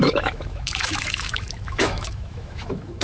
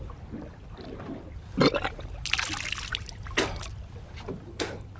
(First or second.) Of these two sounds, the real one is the second